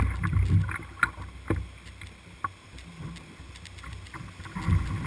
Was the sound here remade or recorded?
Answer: recorded